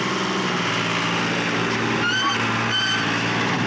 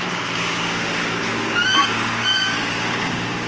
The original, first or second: first